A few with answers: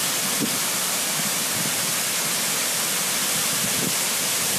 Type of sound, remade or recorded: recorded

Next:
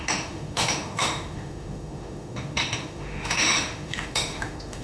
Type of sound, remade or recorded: remade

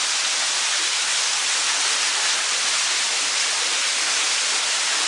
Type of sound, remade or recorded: recorded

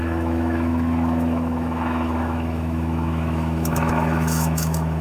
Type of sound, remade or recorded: remade